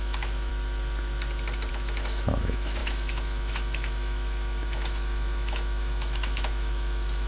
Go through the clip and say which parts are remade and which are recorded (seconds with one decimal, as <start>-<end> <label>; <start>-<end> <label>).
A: 0.0-0.5 remade; 0.5-1.7 recorded; 1.7-7.3 remade